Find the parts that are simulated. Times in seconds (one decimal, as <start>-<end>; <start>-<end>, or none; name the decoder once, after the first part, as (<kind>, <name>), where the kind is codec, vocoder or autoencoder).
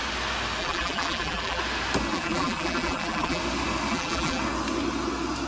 0.6-1.6 (vocoder, BigVGAN v2); 2.1-3.4; 3.9-4.4